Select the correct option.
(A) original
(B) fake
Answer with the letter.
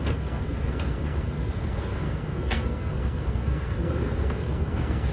B